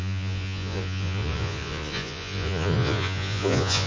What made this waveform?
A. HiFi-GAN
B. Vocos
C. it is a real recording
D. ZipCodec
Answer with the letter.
B